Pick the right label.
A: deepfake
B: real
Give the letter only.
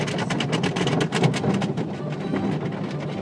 B